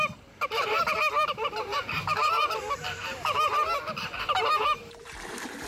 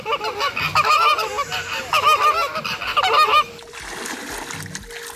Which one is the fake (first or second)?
first